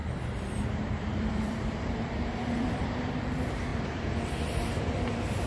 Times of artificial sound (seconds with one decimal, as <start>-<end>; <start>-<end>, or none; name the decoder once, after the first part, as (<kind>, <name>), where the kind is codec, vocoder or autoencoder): 0.0-3.1 (vocoder, BigVGAN v2); 3.7-5.1